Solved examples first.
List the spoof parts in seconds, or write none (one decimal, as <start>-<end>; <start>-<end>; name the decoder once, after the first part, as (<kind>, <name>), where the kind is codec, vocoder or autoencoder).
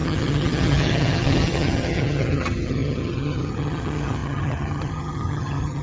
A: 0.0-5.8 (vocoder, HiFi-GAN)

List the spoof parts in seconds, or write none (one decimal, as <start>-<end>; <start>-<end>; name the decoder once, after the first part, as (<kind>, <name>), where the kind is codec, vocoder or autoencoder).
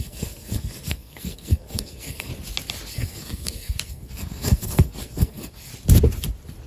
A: 0.0-2.3 (codec, SNAC); 2.9-5.7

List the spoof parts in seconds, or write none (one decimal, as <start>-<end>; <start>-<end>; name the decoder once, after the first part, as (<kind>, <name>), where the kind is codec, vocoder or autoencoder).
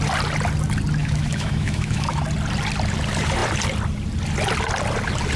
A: 1.0-2.2 (autoencoder, DAC-VAE)